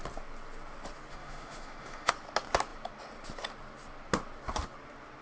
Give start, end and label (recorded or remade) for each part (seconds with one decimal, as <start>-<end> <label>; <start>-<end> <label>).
0.0-1.1 recorded; 1.1-2.1 remade; 2.1-5.2 recorded